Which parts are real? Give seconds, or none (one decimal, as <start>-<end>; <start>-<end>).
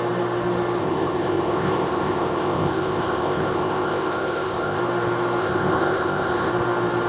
0.0-0.8; 4.8-5.4; 6.5-7.1